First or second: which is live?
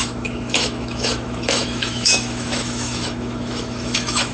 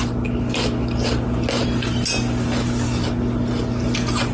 second